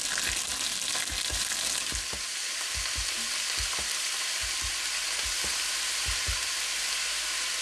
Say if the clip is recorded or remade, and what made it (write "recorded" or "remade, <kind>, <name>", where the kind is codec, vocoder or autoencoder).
recorded